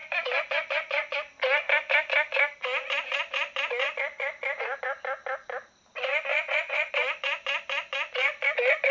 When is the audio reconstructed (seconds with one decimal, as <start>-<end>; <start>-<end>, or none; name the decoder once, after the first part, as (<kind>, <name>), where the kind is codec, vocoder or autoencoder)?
6.3-6.9 (vocoder, WaveNeXt)

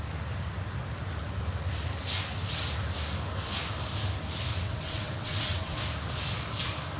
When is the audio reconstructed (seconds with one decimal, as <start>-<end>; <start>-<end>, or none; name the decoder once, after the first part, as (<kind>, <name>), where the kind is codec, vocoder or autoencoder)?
4.5-5.8 (vocoder, WaveNeXt)

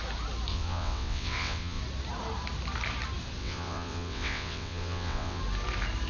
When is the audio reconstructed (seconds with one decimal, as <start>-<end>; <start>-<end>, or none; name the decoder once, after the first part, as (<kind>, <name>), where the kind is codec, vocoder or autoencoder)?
0.5-1.8 (vocoder, WaveNeXt); 3.4-5.4

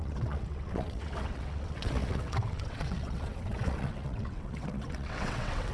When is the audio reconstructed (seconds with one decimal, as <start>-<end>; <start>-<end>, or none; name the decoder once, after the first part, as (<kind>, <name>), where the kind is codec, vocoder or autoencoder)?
0.0-5.7 (vocoder, WaveNeXt)

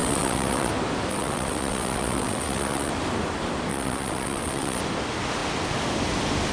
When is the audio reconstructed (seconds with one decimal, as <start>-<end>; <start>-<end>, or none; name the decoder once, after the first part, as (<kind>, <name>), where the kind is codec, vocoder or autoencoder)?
0.0-0.7 (vocoder, WaveNeXt); 1.1-2.9; 3.7-4.8

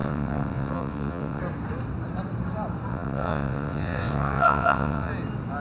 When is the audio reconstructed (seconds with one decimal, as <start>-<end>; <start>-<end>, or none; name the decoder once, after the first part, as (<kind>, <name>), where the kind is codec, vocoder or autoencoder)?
0.0-1.4 (vocoder, WaveNeXt); 2.9-5.1

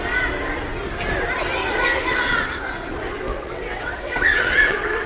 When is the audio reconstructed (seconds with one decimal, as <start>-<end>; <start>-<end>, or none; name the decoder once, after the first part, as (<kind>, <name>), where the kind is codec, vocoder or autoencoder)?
3.3-5.1 (vocoder, WaveNeXt)

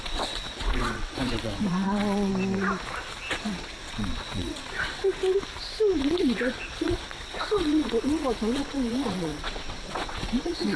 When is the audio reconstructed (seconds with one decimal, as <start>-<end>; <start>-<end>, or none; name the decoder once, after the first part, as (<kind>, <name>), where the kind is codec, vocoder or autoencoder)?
0.0-2.3 (vocoder, WaveNeXt); 3.3-5.2; 6.0-10.8